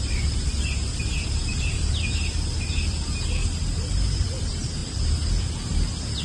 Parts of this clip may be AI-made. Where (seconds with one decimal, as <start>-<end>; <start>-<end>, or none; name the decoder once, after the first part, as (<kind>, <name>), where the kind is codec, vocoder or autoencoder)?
0.0-0.5 (vocoder, BigVGAN v2); 1.0-4.8